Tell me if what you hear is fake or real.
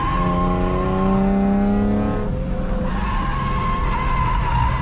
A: real